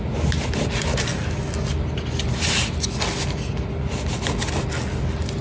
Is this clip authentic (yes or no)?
yes